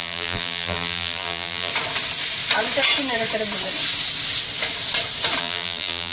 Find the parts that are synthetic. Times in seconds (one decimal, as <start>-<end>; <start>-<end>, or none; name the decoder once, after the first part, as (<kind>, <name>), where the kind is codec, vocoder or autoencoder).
0.0-1.7 (vocoder, BigVGAN v2); 5.4-6.1